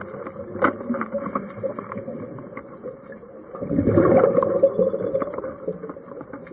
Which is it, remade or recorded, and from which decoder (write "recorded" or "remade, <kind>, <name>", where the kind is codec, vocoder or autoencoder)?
recorded